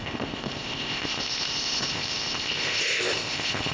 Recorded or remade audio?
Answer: remade